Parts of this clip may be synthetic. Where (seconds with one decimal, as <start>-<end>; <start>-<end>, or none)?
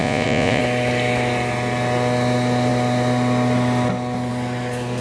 0.0-0.6